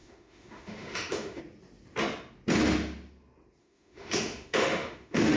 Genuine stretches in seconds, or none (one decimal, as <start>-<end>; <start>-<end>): 1.4-3.6